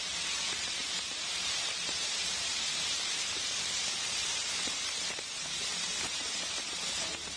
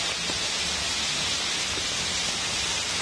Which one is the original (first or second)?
second